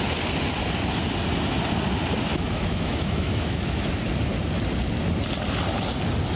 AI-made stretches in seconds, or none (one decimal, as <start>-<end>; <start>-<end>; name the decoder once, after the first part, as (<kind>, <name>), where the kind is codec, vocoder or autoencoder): 2.3-3.9 (autoencoder, DAC-VAE)